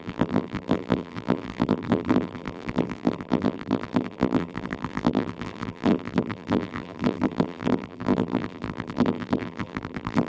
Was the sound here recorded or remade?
remade